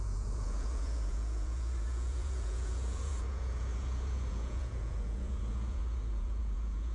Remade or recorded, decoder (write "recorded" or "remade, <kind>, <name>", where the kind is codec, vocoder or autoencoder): remade, vocoder, Vocos